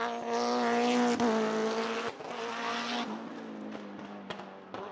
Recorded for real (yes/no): yes